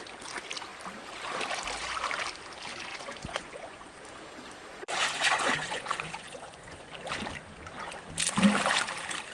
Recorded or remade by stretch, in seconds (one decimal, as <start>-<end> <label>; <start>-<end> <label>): 0.0-2.9 recorded; 2.9-4.0 remade; 4.0-4.7 recorded; 4.7-6.9 remade; 6.9-9.3 recorded